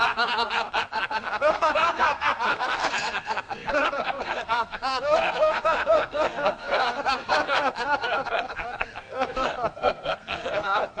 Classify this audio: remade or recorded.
remade